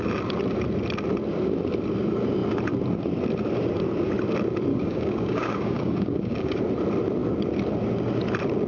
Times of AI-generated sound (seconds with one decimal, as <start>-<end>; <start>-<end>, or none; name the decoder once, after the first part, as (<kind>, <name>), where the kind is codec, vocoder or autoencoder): 4.7-6.6 (codec, DAC)